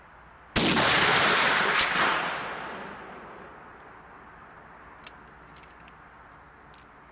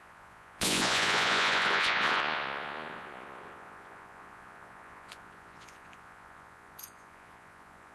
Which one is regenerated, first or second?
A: second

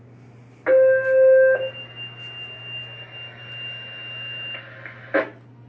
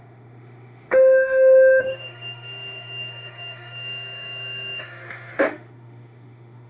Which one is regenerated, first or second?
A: second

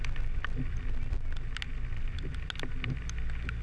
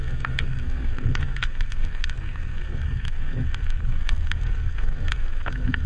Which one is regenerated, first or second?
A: second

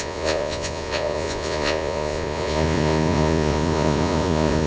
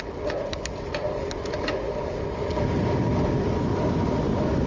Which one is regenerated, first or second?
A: first